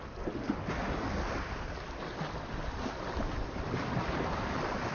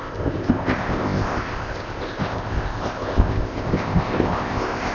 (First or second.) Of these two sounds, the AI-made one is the second